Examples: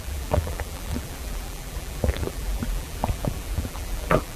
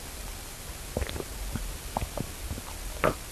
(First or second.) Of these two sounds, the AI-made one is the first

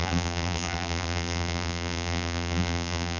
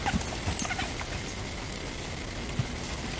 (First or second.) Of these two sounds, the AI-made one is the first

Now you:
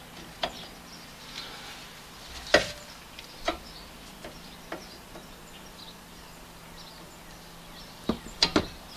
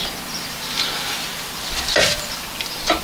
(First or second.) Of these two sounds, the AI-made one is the second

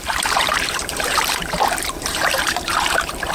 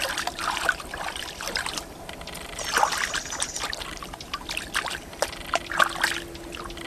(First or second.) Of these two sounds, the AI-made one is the first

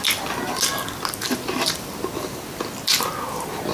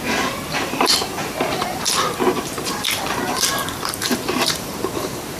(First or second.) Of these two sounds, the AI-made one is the second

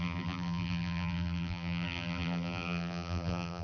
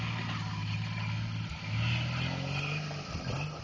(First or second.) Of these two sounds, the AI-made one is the first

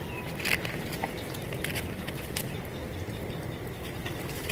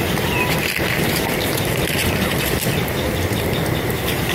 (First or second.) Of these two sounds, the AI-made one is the second